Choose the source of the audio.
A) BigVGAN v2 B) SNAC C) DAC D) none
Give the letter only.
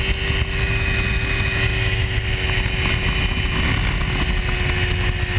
D